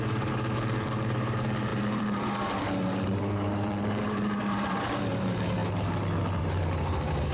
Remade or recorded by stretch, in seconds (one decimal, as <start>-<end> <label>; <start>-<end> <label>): 0.0-5.6 remade; 5.6-6.4 recorded; 6.4-7.3 remade